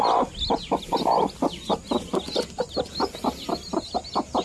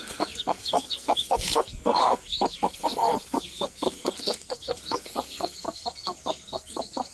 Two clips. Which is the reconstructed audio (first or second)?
second